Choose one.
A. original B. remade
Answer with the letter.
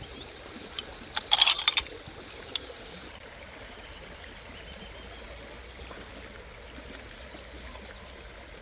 A